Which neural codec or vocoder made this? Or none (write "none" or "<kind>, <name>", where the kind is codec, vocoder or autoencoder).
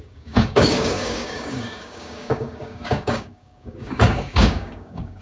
codec, DAC